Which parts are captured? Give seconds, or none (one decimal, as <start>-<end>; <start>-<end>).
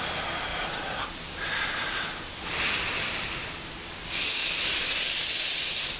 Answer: 0.0-0.5; 2.6-6.0